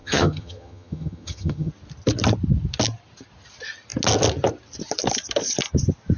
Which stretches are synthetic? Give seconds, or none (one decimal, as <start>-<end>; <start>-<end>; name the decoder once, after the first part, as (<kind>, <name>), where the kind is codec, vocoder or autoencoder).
0.0-1.7 (vocoder, HiFi-GAN)